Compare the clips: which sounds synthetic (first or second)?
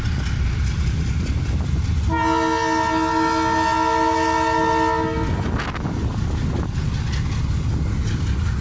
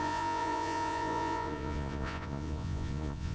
second